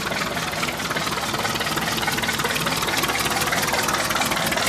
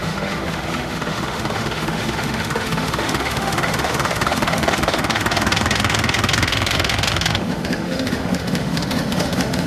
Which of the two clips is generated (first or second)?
second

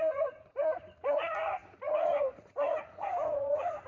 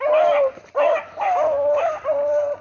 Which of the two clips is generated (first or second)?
first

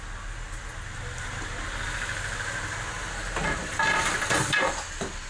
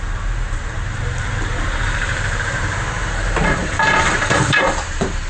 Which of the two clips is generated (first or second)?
second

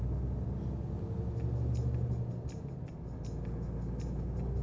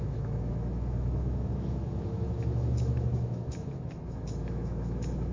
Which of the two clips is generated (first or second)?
second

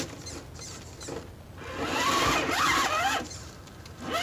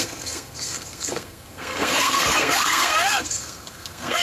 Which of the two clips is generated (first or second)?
second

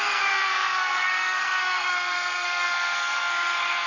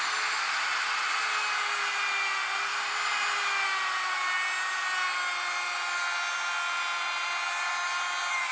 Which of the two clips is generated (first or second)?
first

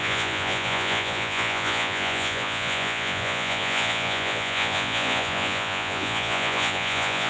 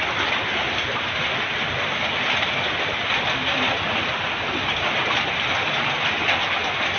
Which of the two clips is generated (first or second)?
first